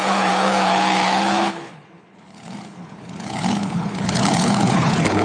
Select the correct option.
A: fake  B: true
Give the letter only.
A